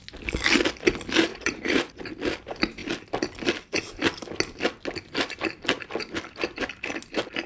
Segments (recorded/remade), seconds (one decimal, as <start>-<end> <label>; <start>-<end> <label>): 0.0-1.3 recorded; 1.3-2.0 remade; 2.0-7.5 recorded